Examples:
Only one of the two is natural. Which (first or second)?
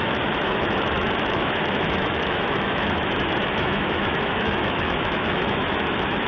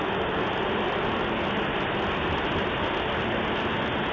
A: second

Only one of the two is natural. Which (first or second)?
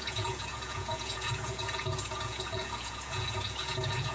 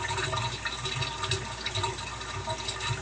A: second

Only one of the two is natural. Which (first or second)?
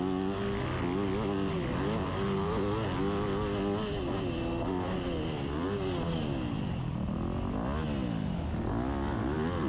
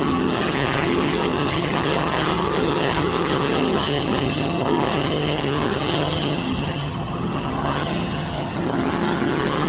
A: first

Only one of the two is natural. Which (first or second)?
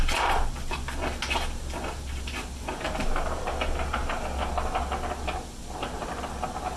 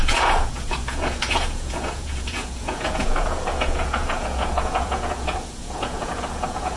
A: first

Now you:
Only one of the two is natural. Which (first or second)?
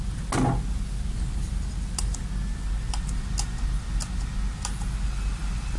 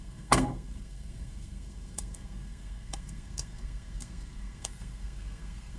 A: first